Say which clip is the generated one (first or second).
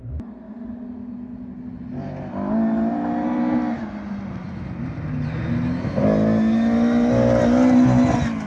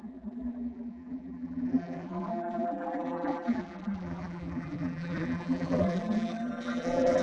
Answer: second